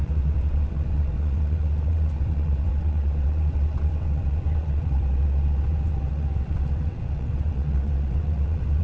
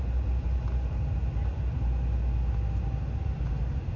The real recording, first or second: second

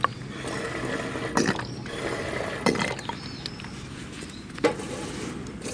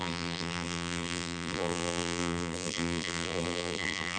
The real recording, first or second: first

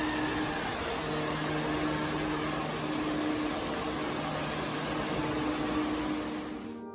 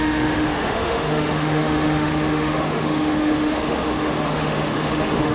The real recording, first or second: first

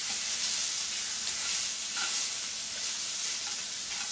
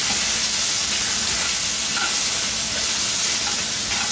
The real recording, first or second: second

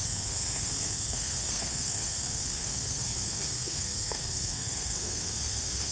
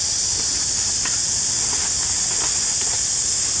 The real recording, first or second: second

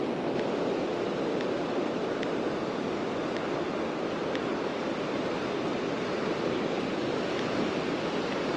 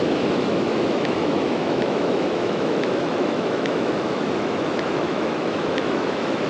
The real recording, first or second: first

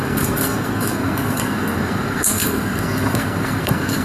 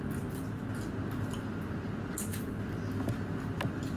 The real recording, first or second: second